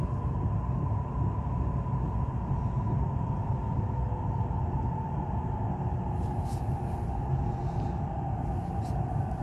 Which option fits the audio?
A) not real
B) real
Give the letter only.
B